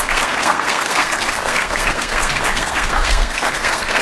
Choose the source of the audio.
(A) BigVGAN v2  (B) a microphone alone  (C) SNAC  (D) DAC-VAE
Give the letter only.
C